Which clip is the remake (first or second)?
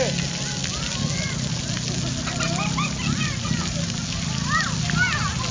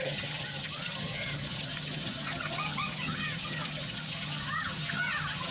second